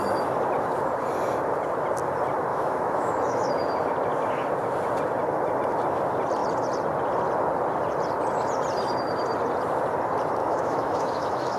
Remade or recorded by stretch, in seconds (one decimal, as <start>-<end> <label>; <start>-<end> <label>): 0.0-2.5 recorded; 2.5-3.5 remade; 3.5-10.4 recorded; 10.4-11.6 remade